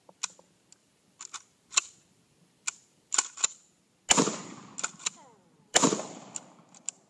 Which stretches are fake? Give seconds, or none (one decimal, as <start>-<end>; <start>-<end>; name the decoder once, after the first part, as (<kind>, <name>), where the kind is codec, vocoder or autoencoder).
0.8-3.8 (vocoder, BigVGAN v2); 5.7-6.6